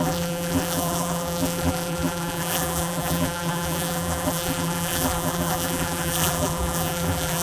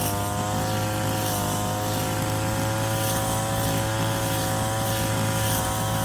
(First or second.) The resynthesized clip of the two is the first